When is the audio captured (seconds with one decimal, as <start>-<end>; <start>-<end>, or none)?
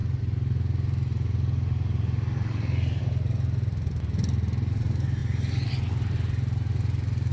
0.0-7.3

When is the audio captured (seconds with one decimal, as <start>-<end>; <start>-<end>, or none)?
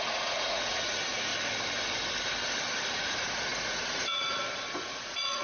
1.3-2.9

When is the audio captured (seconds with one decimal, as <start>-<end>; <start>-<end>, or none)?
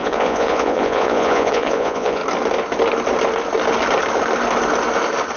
2.2-5.4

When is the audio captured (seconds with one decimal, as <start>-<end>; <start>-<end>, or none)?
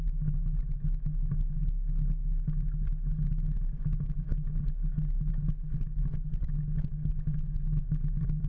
0.0-7.3; 7.8-8.5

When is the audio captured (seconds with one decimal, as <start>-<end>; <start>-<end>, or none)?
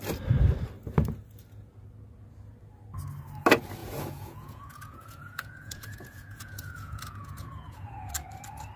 0.0-3.8; 8.1-8.8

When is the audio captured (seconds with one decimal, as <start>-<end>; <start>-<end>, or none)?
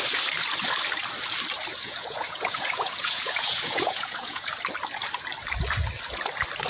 0.0-1.7; 4.5-6.7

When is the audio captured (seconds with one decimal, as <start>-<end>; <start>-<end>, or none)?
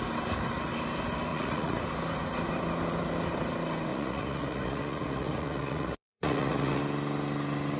0.0-1.3; 1.8-3.9; 6.8-7.8